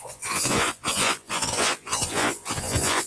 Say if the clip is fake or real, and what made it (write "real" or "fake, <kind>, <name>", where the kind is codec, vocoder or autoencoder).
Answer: fake, vocoder, Vocos